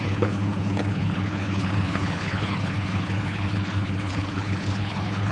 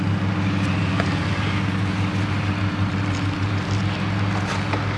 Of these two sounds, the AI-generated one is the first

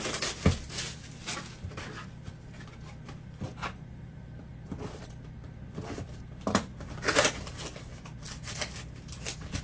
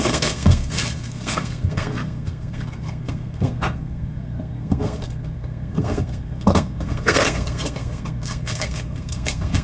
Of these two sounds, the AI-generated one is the second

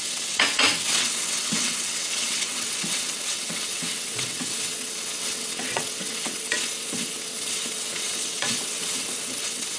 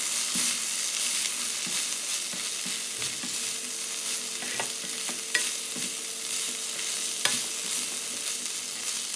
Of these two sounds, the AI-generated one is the first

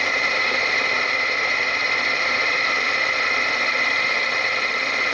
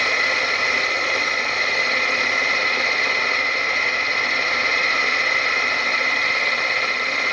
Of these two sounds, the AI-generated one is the first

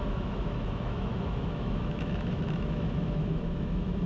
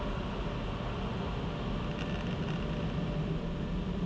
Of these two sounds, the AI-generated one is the first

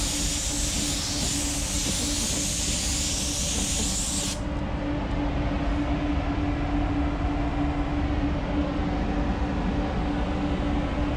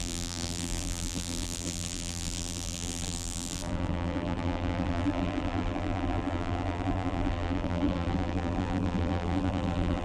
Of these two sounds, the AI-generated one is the second